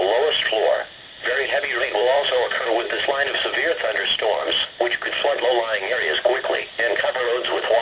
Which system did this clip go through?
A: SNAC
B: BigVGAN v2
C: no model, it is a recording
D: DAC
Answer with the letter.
C